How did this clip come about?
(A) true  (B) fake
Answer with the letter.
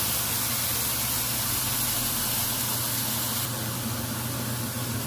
A